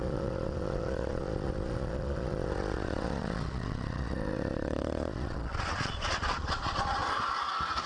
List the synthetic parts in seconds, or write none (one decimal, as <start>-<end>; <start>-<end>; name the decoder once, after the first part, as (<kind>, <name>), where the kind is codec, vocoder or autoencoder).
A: 0.0-7.0 (vocoder, Vocos)